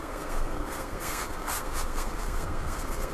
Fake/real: fake